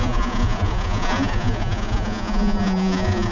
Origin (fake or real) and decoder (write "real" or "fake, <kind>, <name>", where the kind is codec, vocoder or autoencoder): fake, vocoder, Vocos